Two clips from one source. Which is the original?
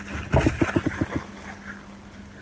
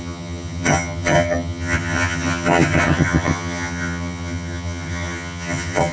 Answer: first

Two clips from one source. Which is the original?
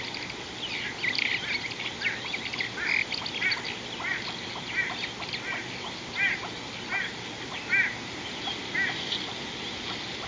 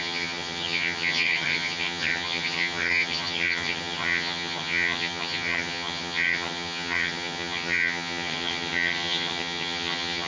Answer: first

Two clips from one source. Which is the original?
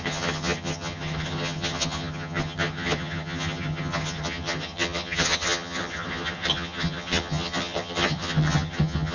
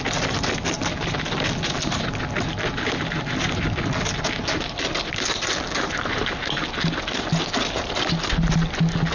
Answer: second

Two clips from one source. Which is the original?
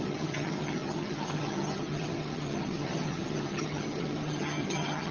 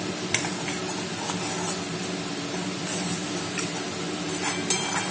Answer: second